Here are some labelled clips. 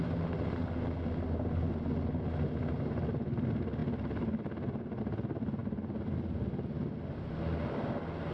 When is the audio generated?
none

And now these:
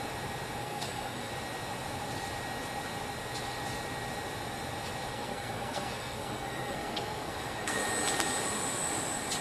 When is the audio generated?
0.6-1.3 (codec, SNAC); 5.1-7.8

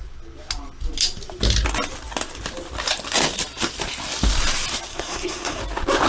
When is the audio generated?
4.9-5.6 (codec, SNAC)

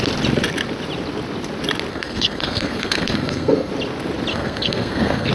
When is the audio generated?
1.9-3.7 (codec, SNAC); 4.3-5.3